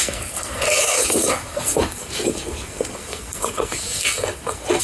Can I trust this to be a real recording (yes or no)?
no